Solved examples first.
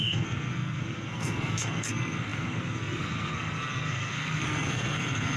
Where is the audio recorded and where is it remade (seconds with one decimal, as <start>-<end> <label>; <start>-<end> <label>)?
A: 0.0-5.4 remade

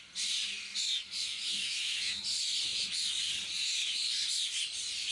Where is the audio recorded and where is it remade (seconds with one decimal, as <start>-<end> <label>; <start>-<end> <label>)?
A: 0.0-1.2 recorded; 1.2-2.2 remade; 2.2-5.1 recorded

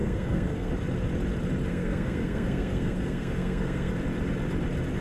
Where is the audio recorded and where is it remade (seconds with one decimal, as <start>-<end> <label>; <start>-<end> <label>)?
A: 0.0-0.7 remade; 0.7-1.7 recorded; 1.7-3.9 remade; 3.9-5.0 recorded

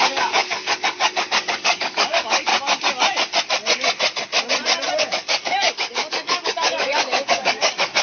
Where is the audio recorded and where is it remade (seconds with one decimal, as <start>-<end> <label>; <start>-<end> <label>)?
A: 0.0-2.5 remade; 2.5-5.0 recorded; 5.0-8.0 remade